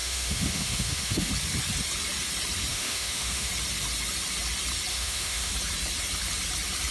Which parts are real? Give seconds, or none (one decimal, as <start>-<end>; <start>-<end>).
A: 1.3-2.7; 3.5-4.9; 5.5-6.9